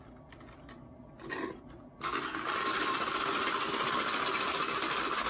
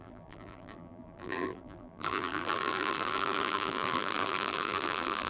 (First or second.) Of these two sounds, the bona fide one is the first